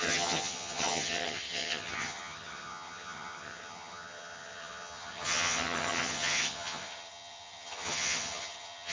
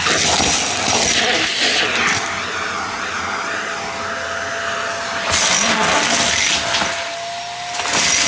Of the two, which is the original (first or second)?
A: second